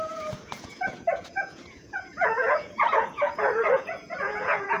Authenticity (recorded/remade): remade